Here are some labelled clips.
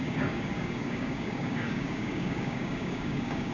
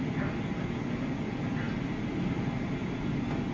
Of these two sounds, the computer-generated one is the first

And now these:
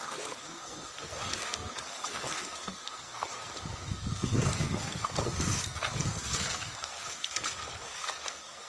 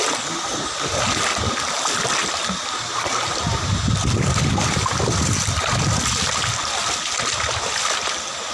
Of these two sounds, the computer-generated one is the first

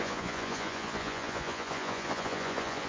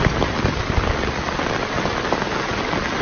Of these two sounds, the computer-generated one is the first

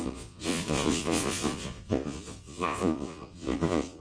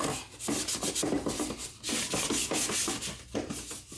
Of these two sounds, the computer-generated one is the first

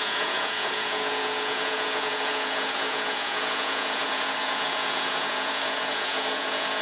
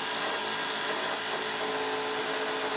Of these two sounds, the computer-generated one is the first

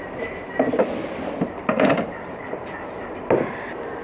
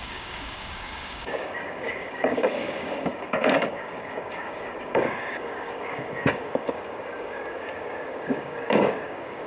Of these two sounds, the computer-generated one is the second